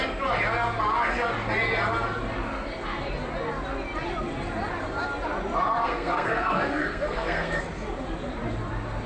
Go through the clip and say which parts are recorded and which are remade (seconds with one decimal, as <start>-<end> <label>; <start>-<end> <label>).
0.0-5.8 recorded; 5.8-7.6 remade; 7.6-9.1 recorded